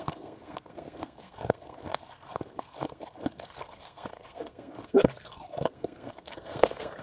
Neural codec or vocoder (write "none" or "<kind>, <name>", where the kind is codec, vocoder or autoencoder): codec, SNAC